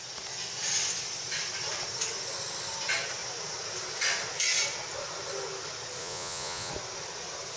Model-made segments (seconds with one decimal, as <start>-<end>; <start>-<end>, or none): 6.0-6.7